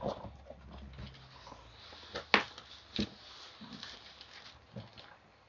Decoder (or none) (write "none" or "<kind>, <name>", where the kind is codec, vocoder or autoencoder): none